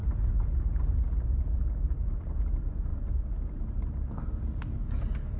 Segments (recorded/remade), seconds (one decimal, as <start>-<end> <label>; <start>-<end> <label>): 0.0-5.4 recorded